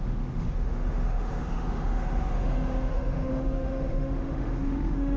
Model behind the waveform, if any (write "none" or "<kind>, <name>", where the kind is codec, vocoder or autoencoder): autoencoder, DAC-VAE